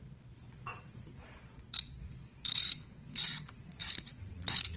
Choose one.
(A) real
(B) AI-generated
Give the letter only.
B